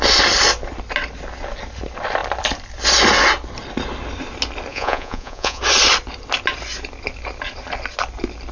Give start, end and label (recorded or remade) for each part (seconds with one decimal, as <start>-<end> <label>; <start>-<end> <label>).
0.0-4.7 recorded; 4.7-5.6 remade; 5.6-8.5 recorded